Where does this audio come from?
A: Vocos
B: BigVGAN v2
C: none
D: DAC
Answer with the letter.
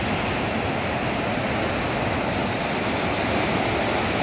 C